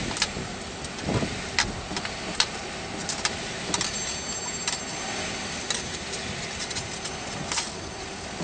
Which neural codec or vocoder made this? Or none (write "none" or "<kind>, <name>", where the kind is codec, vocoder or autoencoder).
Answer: none